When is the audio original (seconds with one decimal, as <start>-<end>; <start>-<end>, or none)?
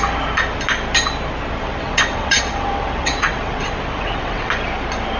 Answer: 0.0-1.6; 4.5-5.2